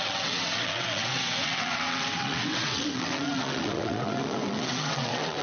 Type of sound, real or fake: fake